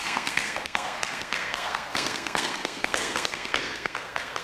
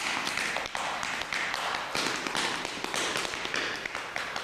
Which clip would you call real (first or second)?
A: second